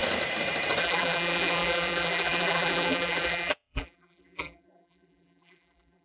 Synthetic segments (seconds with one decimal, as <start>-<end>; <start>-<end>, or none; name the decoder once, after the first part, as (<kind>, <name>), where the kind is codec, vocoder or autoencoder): 0.8-6.0 (vocoder, BigVGAN v2)